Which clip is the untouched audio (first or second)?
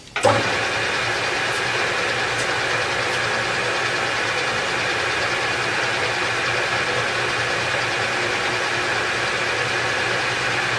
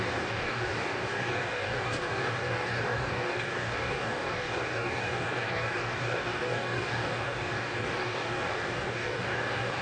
first